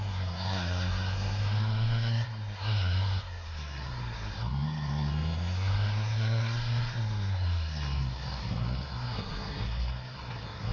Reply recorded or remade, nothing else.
remade